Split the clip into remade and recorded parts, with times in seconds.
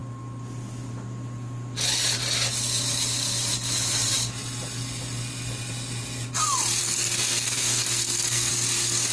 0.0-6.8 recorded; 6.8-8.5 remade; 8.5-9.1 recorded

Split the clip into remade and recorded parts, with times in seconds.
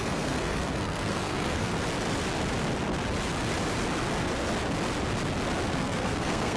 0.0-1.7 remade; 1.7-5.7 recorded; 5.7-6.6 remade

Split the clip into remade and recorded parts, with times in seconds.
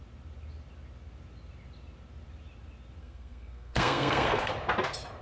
0.0-3.0 recorded; 3.0-4.5 remade; 4.5-5.2 recorded